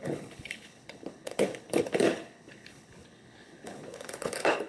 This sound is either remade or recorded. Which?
remade